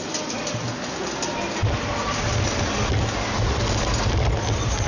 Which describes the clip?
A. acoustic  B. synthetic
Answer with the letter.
A